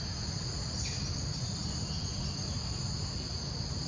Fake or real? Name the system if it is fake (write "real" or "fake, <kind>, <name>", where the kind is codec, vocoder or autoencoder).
real